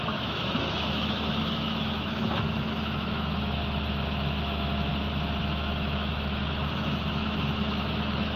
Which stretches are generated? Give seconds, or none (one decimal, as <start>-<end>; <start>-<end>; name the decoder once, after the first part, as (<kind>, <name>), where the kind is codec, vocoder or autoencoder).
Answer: 0.0-4.9 (autoencoder, DAC-VAE); 5.4-8.4